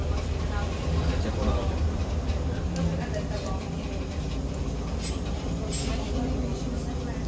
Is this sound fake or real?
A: real